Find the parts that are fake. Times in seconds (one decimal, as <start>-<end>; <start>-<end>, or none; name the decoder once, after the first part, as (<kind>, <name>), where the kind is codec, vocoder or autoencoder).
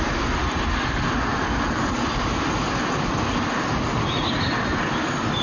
none